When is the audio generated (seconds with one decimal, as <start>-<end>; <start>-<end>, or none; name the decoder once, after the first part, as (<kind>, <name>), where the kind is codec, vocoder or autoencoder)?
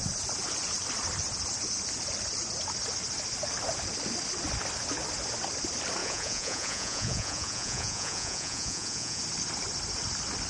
6.0-9.2 (vocoder, Vocos)